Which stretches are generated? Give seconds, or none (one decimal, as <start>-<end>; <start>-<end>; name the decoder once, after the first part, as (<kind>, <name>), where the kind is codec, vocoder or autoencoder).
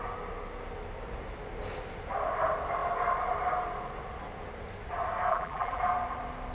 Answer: 5.3-5.8 (vocoder, BigVGAN v2)